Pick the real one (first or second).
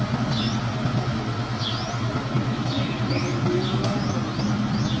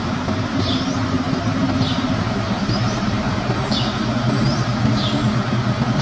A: first